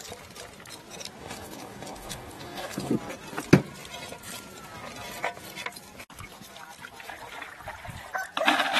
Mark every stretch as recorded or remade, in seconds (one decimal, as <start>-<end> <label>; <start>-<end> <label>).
0.0-1.2 recorded; 1.2-2.9 remade; 2.9-8.8 recorded